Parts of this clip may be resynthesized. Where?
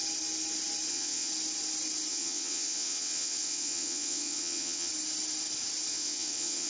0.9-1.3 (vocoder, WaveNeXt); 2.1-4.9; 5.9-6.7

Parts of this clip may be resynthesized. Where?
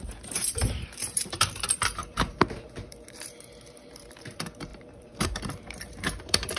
0.0-6.6 (vocoder, BigVGAN v2)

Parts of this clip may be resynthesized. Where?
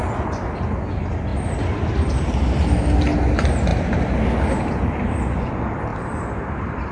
1.3-2.6 (vocoder, BigVGAN v2); 3.7-5.1; 5.9-6.9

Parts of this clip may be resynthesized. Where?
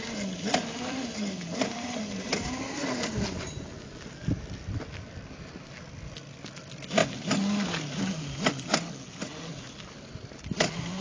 none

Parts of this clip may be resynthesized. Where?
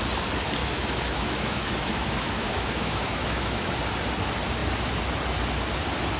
0.6-3.7 (autoencoder, DAC-VAE)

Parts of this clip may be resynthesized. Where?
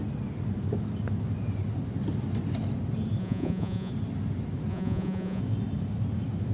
3.2-3.9 (vocoder, Vocos); 4.7-5.4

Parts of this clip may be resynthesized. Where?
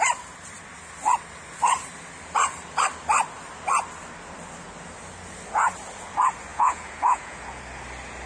6.5-7.6 (vocoder, Vocos)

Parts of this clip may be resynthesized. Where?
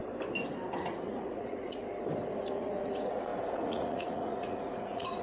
0.8-1.8 (vocoder, Vocos); 2.5-5.2